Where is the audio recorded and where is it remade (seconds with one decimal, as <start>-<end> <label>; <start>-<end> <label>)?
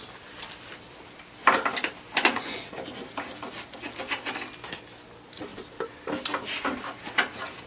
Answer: 0.0-2.1 recorded; 2.1-2.7 remade; 2.7-7.7 recorded